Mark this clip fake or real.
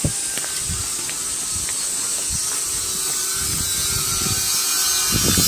real